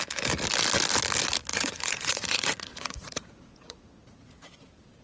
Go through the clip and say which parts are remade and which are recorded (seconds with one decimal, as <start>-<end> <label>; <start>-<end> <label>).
0.0-1.5 recorded; 1.5-4.5 remade; 4.5-5.0 recorded